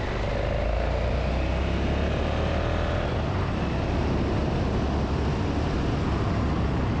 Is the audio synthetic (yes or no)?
no